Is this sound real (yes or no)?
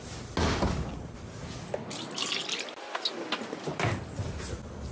yes